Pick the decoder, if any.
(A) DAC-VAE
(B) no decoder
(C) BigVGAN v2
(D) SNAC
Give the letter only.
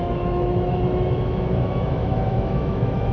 A